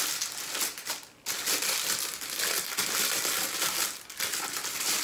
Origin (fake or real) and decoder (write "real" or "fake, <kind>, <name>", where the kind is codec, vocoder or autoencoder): real